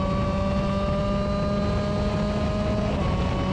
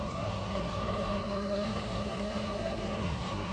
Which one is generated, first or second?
second